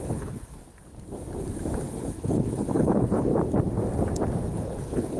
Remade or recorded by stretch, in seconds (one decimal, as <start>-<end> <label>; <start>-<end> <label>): 0.0-0.6 remade; 0.6-1.9 recorded; 1.9-3.3 remade; 3.3-4.5 recorded; 4.5-5.2 remade